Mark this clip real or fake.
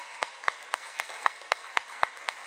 fake